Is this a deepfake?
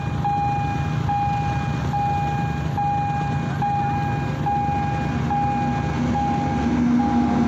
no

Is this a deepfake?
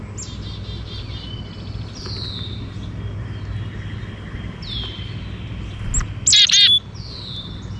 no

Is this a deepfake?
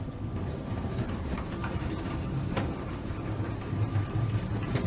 yes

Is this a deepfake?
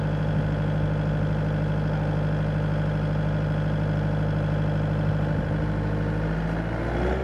no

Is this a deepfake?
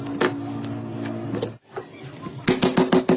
no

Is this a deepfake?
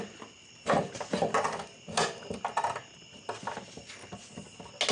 no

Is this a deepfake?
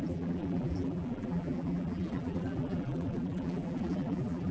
yes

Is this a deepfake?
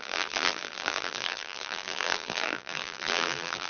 yes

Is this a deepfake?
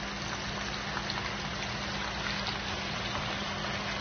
no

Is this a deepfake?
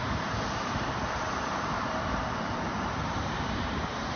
yes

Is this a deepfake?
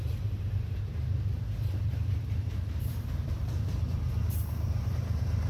yes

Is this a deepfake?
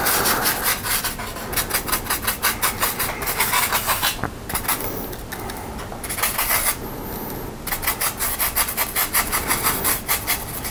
no